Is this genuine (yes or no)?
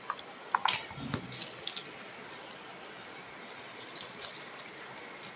yes